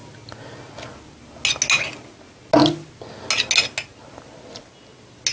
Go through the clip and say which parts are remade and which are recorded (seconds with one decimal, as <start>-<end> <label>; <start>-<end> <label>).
0.0-5.3 recorded